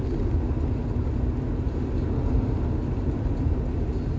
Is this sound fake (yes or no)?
no